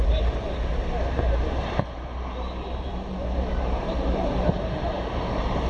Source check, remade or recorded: remade